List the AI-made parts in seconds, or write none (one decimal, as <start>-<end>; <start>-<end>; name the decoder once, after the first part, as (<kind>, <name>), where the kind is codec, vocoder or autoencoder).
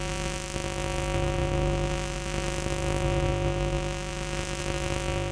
none